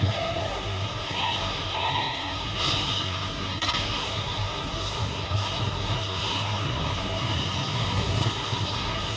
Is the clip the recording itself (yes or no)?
no